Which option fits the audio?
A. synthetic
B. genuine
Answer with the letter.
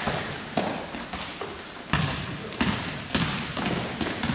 B